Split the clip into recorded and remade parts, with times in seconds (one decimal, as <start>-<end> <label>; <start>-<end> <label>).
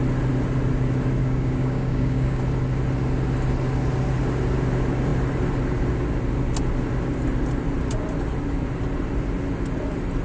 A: 0.0-1.2 recorded; 1.2-2.4 remade; 2.4-10.2 recorded